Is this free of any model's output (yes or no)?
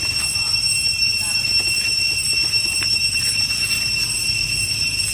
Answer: yes